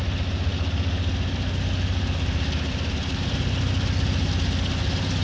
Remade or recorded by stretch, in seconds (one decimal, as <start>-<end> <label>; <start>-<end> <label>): 0.0-5.2 recorded